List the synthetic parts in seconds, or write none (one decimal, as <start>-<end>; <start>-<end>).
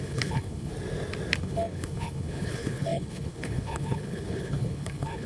0.0-0.7; 1.4-5.3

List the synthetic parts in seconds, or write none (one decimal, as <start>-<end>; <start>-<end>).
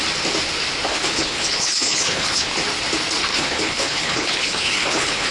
0.9-2.5; 3.3-5.3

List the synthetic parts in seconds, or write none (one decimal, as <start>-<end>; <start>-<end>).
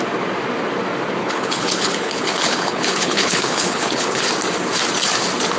1.2-4.2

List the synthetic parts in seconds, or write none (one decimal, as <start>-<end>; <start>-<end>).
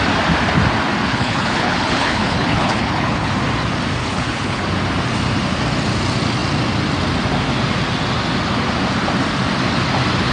1.1-3.3; 4.0-4.6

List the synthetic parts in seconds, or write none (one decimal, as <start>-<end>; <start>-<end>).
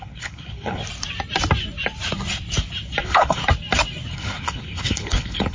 0.0-0.8; 3.0-3.4; 4.1-5.5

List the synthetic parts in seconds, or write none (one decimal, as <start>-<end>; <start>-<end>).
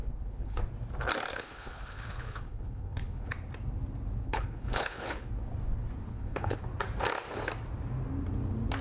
0.0-0.6; 1.3-3.3; 4.2-5.3; 6.1-6.6